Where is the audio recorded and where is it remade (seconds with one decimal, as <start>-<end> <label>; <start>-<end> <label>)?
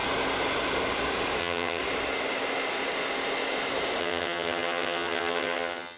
0.0-1.4 recorded; 1.4-1.8 remade; 1.8-4.0 recorded; 4.0-6.0 remade